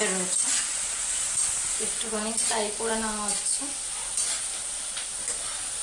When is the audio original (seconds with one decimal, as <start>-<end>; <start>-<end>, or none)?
0.0-5.8